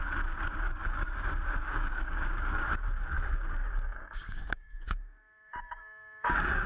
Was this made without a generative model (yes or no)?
no